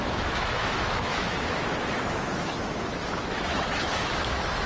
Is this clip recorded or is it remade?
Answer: remade